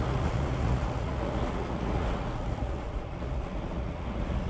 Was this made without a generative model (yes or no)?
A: no